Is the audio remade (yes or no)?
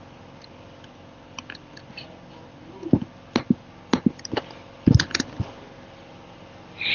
no